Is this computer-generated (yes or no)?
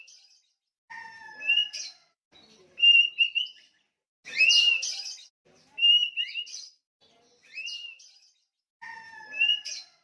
no